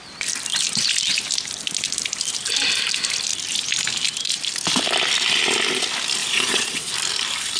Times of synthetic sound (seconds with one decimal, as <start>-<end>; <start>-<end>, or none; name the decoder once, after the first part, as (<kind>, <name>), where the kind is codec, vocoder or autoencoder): 6.2-6.9 (vocoder, Vocos)

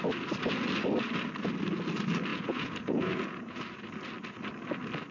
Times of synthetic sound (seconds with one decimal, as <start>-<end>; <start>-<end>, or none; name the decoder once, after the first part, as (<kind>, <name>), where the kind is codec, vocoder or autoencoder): 2.3-3.6 (vocoder, Vocos)

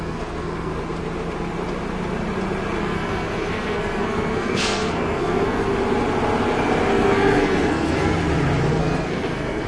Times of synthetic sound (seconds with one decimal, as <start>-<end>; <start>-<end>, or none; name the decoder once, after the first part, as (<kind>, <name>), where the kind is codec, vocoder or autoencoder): 0.0-0.7 (codec, SNAC); 2.8-5.7; 6.9-8.2; 8.7-9.7

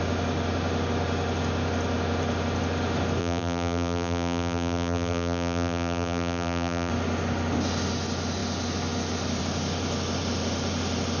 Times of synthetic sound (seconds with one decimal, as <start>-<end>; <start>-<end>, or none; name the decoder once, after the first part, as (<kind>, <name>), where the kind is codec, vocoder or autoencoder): 3.2-6.9 (vocoder, BigVGAN v2)

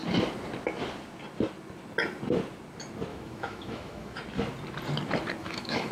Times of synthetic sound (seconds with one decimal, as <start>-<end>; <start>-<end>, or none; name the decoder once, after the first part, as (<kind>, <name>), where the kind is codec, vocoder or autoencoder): 3.1-4.2 (autoencoder, DAC-VAE); 5.4-5.9

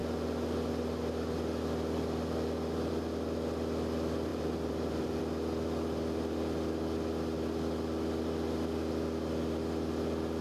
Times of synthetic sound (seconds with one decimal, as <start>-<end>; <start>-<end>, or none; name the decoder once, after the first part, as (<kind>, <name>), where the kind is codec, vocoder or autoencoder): 4.3-5.2 (vocoder, BigVGAN v2)

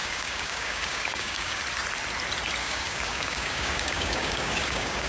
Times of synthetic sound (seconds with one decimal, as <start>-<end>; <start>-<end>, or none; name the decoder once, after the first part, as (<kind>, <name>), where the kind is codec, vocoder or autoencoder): 0.0-1.6 (codec, DAC); 2.6-5.1